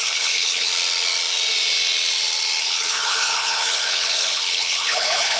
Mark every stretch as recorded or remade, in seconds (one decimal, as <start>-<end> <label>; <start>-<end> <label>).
0.0-0.7 remade; 0.7-2.6 recorded; 2.6-5.4 remade